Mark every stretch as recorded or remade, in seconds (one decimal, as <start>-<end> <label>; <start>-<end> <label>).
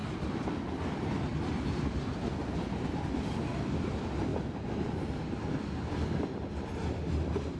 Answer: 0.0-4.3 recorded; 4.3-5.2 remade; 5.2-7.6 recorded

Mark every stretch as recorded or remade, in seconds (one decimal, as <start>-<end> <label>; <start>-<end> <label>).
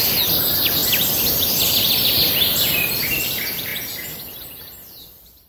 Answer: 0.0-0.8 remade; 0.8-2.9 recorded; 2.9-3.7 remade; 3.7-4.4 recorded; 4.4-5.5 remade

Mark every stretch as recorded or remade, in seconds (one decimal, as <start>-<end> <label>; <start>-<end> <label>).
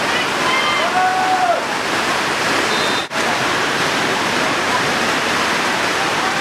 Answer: 0.0-3.0 recorded; 3.0-6.4 remade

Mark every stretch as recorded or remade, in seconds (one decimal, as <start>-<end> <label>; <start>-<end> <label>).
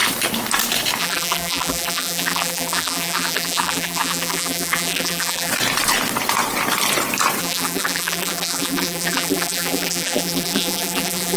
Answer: 0.0-1.0 recorded; 1.0-5.5 remade; 5.5-7.4 recorded; 7.4-11.4 remade